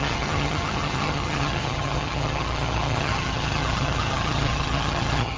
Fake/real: fake